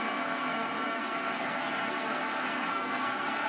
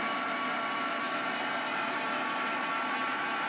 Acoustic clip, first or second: second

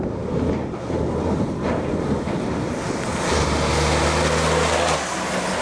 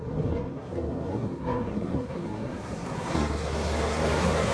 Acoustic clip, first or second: first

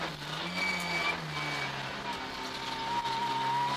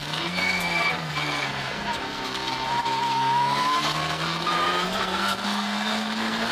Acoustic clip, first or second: first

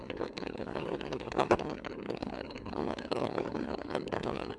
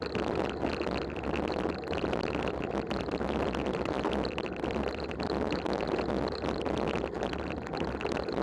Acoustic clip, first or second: second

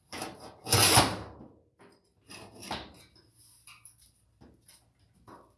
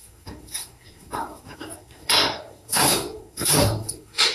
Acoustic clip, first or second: first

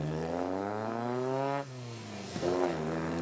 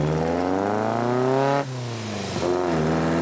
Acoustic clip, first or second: second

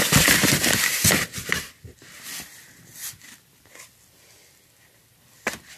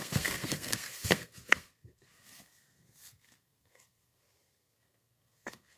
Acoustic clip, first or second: first